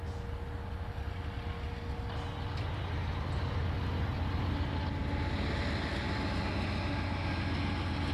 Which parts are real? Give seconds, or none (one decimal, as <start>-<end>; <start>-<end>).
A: 0.0-8.1